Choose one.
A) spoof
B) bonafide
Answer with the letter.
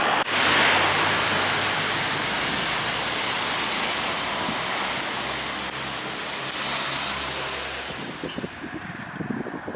B